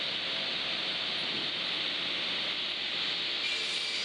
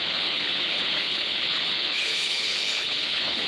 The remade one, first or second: second